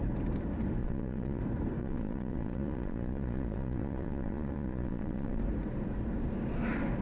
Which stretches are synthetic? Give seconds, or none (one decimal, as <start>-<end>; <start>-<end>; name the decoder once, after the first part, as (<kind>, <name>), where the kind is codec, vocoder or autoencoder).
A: 0.8-1.4 (vocoder, Vocos); 1.8-5.4